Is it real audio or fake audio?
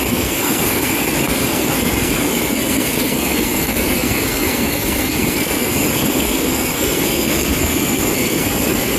fake